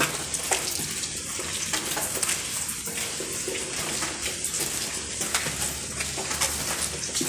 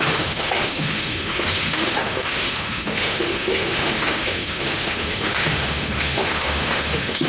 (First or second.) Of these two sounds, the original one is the first